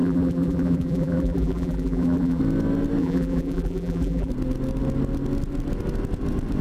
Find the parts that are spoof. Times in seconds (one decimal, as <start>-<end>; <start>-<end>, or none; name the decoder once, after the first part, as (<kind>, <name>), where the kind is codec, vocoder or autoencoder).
0.0-2.4 (vocoder, BigVGAN v2); 3.0-4.3